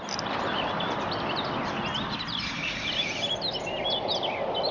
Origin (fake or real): real